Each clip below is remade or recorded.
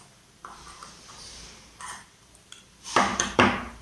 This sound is remade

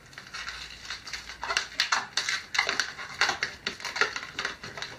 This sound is recorded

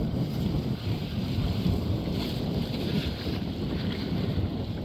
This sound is remade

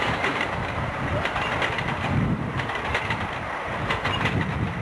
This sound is remade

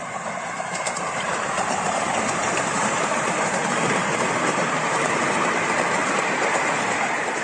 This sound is remade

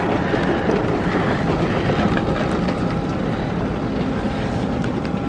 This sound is recorded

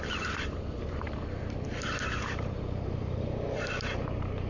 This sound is remade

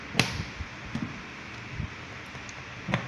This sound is recorded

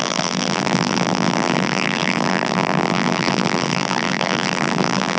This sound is remade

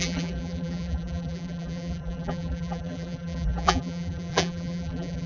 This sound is remade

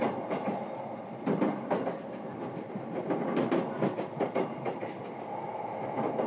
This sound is recorded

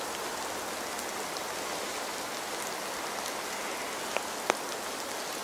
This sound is recorded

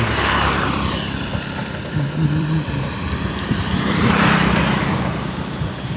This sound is remade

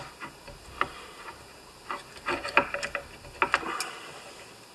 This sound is recorded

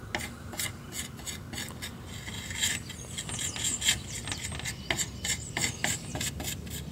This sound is recorded